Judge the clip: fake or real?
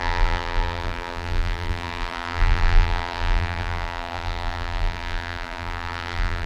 fake